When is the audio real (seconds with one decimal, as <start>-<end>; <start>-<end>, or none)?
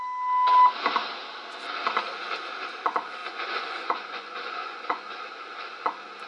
0.0-3.2; 5.1-6.3